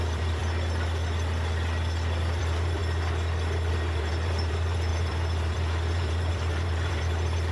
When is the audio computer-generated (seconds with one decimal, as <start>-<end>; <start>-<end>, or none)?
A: 0.0-0.4; 2.4-2.8; 3.7-7.5